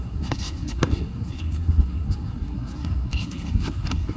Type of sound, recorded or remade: remade